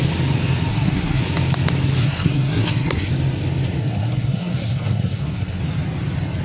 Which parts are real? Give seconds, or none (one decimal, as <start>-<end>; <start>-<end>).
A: 0.0-0.7; 1.2-2.0; 3.1-3.8; 5.6-6.4